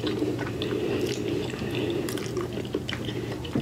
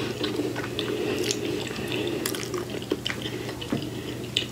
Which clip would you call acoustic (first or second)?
second